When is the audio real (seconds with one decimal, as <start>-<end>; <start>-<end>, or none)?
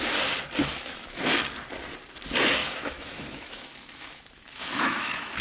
0.0-0.6; 1.3-2.6